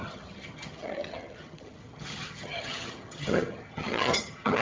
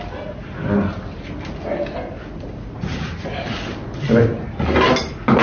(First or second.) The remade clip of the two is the first